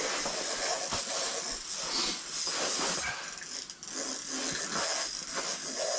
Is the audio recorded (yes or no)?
yes